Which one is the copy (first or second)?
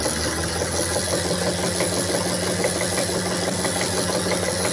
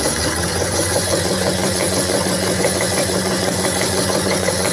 second